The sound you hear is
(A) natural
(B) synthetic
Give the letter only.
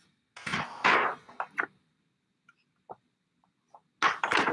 A